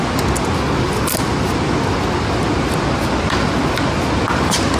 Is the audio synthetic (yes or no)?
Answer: no